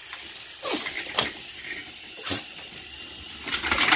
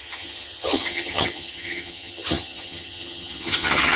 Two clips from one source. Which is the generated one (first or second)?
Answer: second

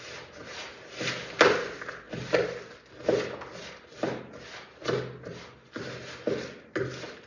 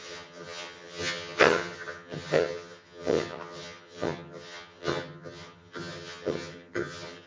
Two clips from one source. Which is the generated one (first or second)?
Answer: second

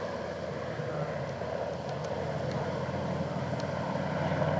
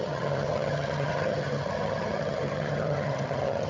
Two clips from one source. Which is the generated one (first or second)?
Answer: second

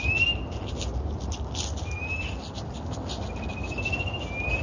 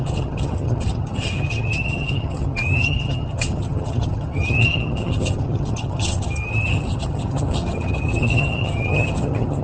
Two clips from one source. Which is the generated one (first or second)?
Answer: second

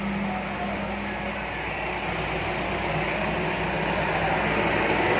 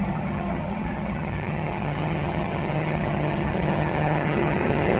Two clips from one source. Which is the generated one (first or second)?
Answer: second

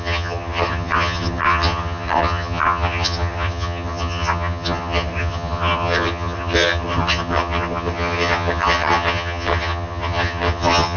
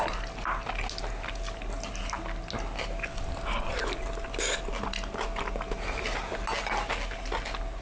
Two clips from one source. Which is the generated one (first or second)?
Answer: first